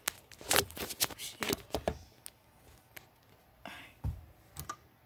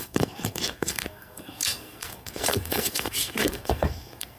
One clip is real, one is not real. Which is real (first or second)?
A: first